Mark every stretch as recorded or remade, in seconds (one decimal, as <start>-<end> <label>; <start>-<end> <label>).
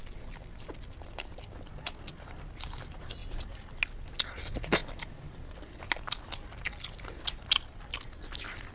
0.0-8.7 recorded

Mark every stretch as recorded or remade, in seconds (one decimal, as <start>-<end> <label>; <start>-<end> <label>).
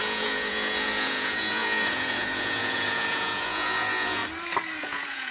0.0-4.2 remade; 4.2-4.8 recorded; 4.8-5.3 remade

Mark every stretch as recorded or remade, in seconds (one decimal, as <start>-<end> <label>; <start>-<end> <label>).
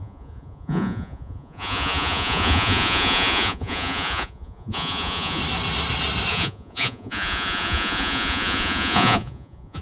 0.0-5.4 remade; 5.4-6.3 recorded; 6.3-9.8 remade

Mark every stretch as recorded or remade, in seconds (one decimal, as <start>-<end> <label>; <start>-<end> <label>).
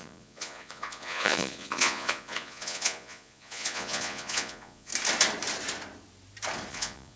0.0-4.9 remade; 4.9-6.7 recorded; 6.7-7.2 remade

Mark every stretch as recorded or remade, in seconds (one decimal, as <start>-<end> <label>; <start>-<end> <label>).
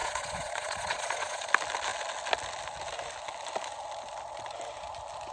0.0-1.5 remade; 1.5-5.3 recorded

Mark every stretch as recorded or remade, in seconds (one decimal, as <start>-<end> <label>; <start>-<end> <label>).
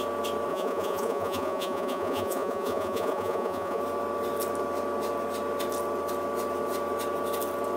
0.0-0.5 recorded; 0.5-3.8 remade; 3.8-7.8 recorded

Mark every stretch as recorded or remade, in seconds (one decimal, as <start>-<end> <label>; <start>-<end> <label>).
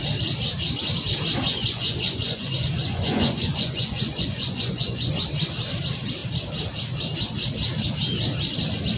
0.0-1.5 recorded; 1.5-5.1 remade; 5.1-9.0 recorded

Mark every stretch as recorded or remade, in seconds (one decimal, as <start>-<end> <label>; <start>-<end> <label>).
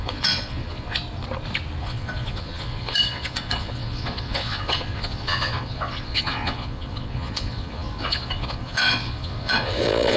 0.0-1.0 remade; 1.0-1.8 recorded; 1.8-10.2 remade